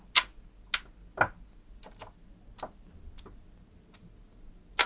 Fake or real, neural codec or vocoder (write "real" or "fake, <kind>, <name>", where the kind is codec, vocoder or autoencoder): real